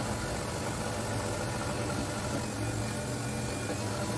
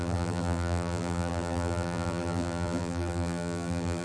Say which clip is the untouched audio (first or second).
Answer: first